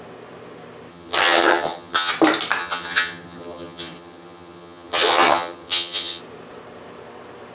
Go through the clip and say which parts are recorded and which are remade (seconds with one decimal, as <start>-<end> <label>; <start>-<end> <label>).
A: 0.0-0.9 recorded; 0.9-2.1 remade; 2.1-2.6 recorded; 2.6-6.2 remade; 6.2-7.5 recorded